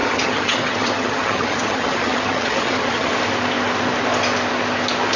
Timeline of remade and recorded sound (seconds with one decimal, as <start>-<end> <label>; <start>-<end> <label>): 0.0-3.1 remade; 3.1-5.2 recorded